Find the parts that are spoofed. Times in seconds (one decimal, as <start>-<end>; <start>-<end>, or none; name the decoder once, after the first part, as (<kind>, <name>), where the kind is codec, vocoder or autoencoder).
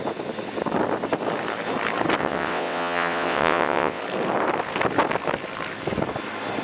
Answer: 2.2-4.0 (vocoder, WaveNeXt)